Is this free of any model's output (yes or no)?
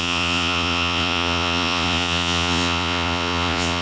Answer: no